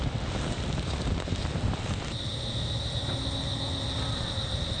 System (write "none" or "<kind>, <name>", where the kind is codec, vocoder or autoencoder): none